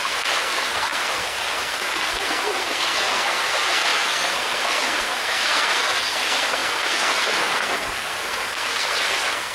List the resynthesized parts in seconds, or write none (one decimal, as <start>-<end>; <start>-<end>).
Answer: 0.0-9.5